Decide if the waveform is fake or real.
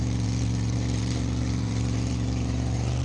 fake